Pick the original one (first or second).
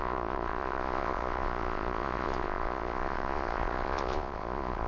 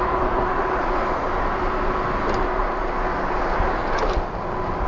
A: second